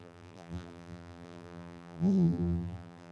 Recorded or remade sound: remade